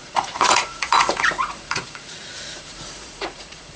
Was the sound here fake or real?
fake